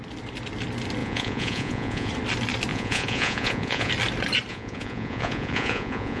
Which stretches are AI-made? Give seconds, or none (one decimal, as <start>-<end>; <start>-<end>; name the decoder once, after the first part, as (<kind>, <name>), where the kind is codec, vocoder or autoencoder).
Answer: 1.0-2.1 (vocoder, Vocos); 2.7-3.9; 4.5-6.2

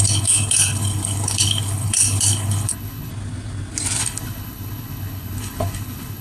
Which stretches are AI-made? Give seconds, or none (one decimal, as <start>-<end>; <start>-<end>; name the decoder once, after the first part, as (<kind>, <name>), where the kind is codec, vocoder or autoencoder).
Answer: 0.0-3.1 (codec, HILCodec); 4.0-6.2

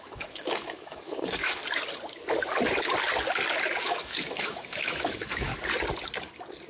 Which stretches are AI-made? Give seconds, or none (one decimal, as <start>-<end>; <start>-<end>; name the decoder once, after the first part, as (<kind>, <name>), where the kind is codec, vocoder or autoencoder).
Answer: 0.0-1.6 (autoencoder, DAC-VAE); 3.8-5.5